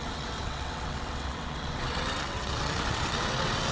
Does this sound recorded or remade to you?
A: remade